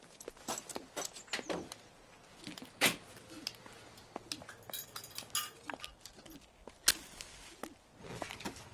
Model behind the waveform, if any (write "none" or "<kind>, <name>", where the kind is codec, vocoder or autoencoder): none